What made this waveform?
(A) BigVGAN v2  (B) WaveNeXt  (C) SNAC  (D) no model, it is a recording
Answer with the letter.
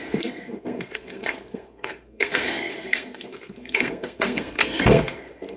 C